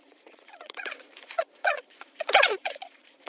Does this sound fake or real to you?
fake